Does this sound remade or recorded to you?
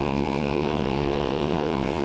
remade